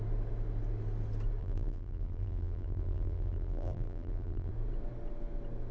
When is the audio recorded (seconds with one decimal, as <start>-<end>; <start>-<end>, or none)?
0.0-1.4; 4.5-5.7